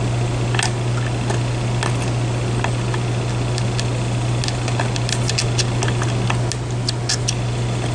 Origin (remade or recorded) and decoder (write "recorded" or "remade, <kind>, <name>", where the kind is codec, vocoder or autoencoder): recorded